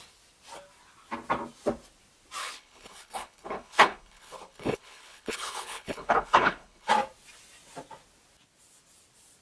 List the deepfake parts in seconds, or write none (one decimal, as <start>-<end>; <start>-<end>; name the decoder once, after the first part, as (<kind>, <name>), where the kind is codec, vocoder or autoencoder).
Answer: 2.4-6.9 (codec, HILCodec)